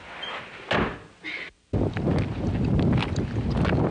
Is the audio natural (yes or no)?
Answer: yes